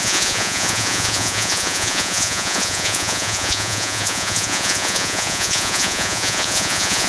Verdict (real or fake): fake